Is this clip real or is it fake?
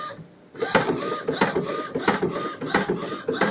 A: fake